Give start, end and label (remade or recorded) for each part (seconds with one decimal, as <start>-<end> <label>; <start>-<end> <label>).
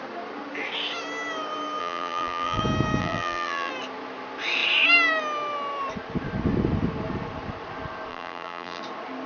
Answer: 0.0-1.8 recorded; 1.8-2.6 remade; 2.6-3.0 recorded; 3.0-3.7 remade; 3.7-8.1 recorded; 8.1-8.8 remade; 8.8-9.3 recorded